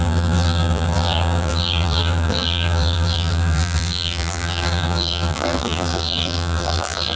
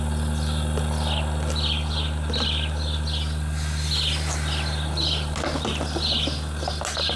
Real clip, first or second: second